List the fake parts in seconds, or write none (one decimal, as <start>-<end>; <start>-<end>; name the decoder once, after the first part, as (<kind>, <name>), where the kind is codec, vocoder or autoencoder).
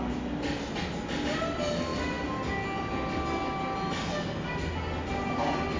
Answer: none